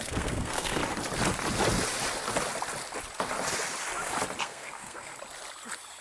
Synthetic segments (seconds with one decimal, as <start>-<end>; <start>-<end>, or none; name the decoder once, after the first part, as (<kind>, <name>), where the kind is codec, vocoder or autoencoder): 0.0-0.8 (codec, SNAC); 4.4-5.1